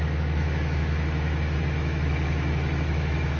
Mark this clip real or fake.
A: fake